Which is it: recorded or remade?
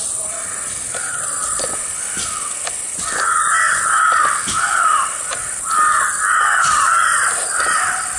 remade